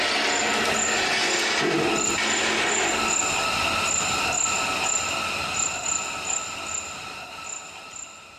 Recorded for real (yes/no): yes